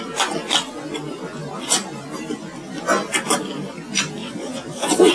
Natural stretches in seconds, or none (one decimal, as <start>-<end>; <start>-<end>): 0.0-4.2

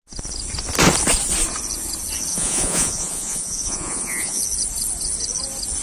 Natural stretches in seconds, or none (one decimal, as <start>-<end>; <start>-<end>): 0.0-2.3; 4.4-5.8

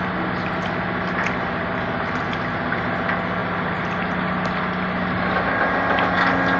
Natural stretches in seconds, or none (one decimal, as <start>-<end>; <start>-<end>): 0.0-6.6

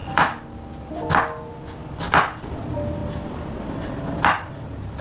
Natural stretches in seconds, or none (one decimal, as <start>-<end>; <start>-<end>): 0.0-5.0

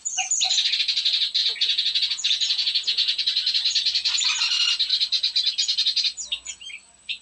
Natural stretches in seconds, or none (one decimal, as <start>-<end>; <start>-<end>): 0.0-1.4; 3.2-7.2